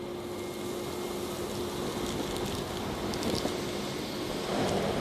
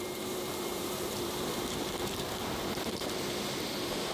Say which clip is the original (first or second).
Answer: first